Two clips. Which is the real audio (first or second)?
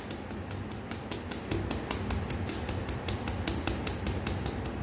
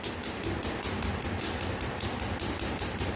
first